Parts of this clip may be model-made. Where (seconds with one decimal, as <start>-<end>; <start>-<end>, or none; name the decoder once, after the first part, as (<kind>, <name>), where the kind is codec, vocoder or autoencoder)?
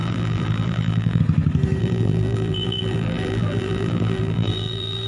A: 0.0-1.2 (vocoder, BigVGAN v2); 1.8-5.1